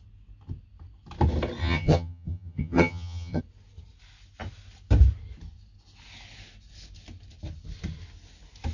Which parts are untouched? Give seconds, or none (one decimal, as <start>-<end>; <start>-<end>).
0.0-1.6; 3.4-8.7